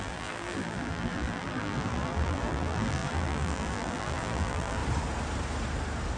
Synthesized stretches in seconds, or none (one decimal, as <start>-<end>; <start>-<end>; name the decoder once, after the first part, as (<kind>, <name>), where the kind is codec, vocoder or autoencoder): 0.0-4.8 (vocoder, BigVGAN v2)

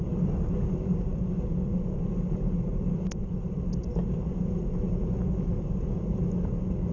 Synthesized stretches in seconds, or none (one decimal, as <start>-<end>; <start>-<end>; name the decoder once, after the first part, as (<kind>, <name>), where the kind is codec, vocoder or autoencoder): none

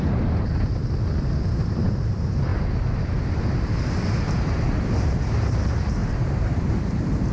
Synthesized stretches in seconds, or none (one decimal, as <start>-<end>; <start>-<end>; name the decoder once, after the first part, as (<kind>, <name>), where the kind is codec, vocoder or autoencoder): 0.0-0.8 (vocoder, BigVGAN v2); 1.6-7.3

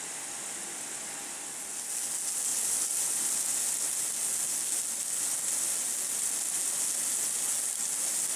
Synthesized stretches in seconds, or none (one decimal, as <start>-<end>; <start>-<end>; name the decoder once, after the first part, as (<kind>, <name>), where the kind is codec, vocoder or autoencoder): none